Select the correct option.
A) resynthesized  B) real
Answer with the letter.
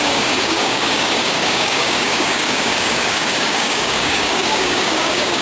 A